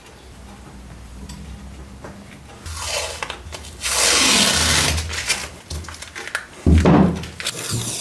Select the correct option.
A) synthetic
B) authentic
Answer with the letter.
B